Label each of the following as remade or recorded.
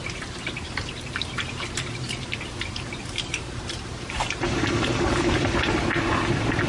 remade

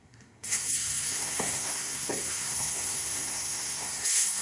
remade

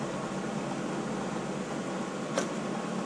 recorded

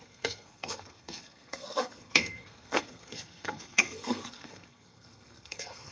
remade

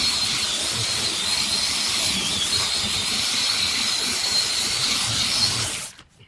recorded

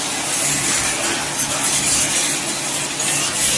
recorded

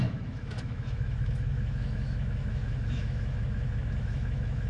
remade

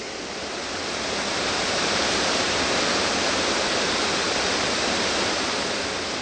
recorded